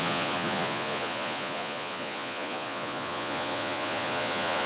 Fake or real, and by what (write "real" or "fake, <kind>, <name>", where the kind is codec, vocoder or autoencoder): fake, vocoder, Vocos